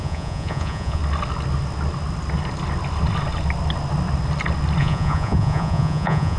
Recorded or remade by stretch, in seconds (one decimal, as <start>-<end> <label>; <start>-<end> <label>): 0.0-1.0 remade; 1.0-4.8 recorded; 4.8-6.4 remade